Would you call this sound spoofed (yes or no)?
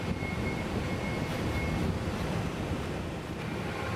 no